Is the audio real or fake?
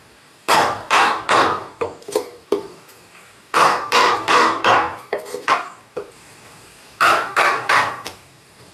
fake